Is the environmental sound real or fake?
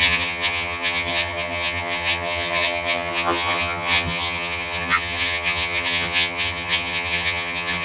fake